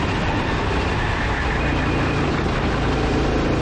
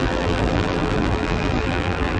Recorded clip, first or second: first